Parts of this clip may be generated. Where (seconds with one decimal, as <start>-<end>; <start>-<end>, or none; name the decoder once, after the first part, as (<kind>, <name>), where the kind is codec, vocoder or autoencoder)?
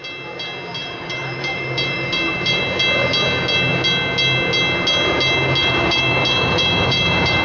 0.8-2.6 (vocoder, BigVGAN v2); 5.6-7.4